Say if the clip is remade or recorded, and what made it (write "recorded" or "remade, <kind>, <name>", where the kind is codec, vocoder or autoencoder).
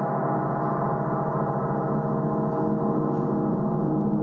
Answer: recorded